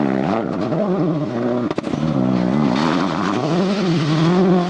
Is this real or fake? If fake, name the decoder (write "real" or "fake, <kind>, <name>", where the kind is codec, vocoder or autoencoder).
real